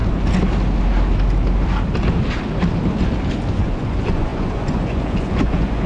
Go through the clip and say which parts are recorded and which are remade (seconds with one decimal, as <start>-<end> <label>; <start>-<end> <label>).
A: 0.0-3.5 recorded; 3.5-5.9 remade